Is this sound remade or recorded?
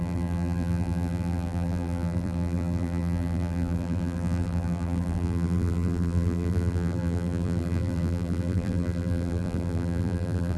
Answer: remade